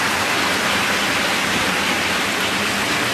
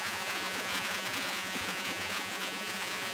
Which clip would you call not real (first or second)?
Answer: second